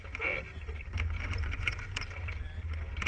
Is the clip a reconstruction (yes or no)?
no